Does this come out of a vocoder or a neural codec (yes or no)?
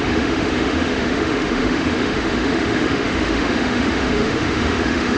yes